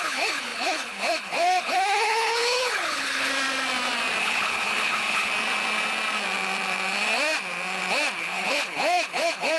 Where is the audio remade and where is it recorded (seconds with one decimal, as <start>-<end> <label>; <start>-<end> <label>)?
0.0-3.3 remade; 3.3-4.2 recorded; 4.2-5.3 remade; 5.3-8.2 recorded; 8.2-9.6 remade